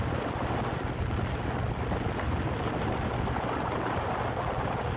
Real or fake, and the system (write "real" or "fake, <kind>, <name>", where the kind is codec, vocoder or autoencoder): real